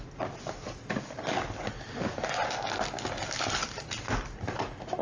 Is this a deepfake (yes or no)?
no